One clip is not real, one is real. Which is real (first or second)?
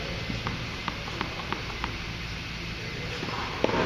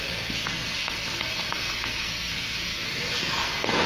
first